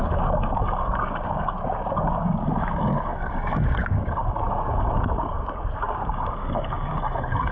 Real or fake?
fake